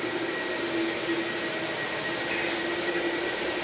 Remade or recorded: recorded